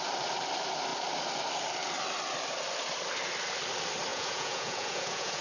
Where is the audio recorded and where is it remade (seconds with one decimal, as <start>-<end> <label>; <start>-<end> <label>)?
0.0-4.1 recorded; 4.1-5.4 remade